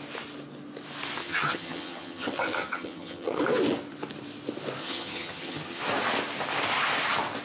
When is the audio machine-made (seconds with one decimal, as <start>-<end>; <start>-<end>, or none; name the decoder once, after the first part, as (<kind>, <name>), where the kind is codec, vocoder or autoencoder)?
1.2-3.4 (vocoder, HiFi-GAN); 4.8-5.8